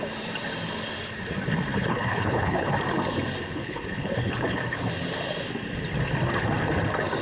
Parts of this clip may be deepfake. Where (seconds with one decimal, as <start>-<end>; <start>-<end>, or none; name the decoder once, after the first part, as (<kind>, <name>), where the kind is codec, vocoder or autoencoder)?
1.7-2.7 (codec, HILCodec); 3.5-4.9